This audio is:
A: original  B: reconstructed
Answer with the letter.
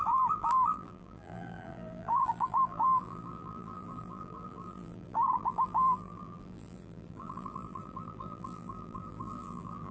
B